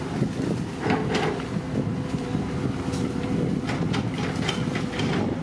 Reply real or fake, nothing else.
real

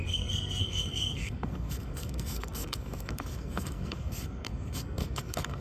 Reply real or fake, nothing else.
fake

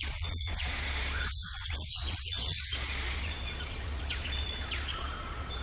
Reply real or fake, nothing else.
fake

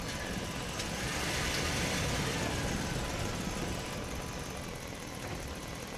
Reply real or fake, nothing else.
real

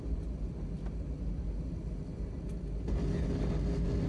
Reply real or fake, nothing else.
real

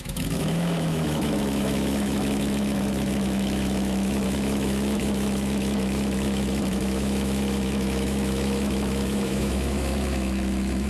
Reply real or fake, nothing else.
fake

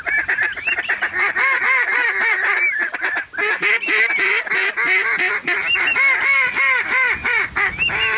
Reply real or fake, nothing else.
real